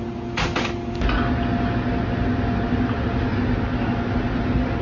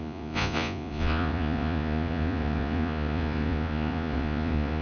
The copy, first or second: second